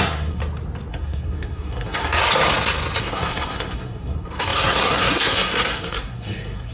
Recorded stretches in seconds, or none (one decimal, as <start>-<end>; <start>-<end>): 0.4-0.9; 2.2-3.0

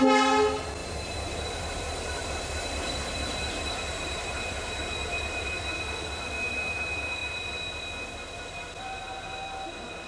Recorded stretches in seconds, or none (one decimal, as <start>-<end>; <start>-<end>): 0.0-0.8; 5.6-10.1

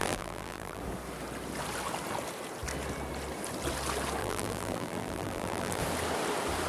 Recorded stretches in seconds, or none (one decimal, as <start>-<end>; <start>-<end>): 0.8-4.2; 5.8-6.7

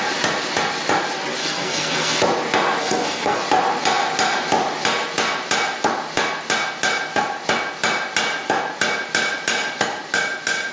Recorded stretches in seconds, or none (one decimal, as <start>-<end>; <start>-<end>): 0.0-1.4; 2.2-2.8; 3.4-10.7